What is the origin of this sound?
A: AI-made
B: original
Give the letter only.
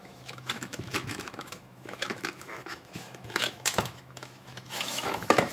A